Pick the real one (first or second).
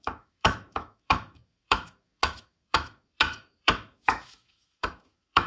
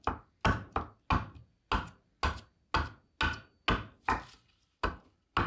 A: second